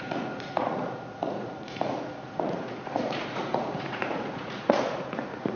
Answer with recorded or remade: remade